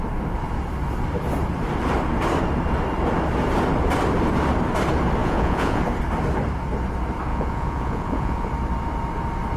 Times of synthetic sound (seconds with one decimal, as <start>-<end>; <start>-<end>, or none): 5.2-5.8; 7.3-8.5